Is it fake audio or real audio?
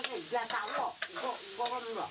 real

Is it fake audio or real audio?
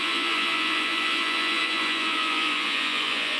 fake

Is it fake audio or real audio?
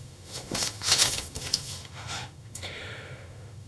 fake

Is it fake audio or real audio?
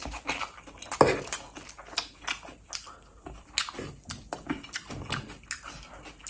real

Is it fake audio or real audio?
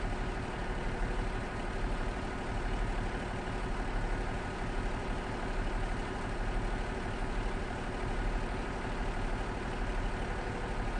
fake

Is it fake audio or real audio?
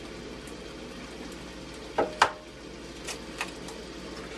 real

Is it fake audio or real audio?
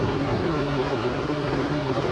fake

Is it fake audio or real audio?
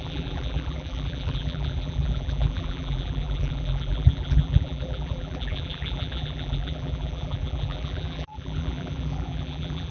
fake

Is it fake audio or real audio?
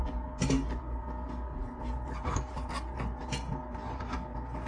real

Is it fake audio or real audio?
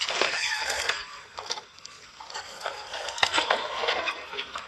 fake